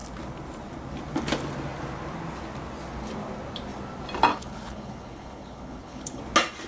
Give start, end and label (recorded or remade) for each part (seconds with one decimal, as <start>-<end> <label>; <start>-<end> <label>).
0.0-4.3 recorded; 4.3-6.2 remade; 6.2-6.7 recorded